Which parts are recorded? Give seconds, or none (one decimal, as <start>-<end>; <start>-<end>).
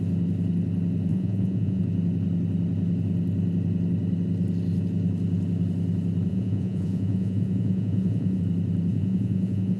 0.0-1.1; 1.8-6.3; 8.4-8.9